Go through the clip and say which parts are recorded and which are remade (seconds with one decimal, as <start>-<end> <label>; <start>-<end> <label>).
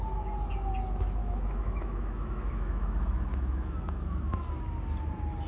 0.0-1.2 recorded; 1.2-4.5 remade; 4.5-5.5 recorded